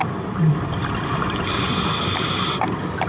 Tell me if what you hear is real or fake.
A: real